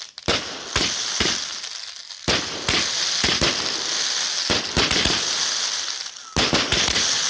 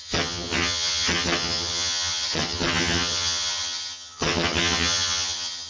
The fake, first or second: second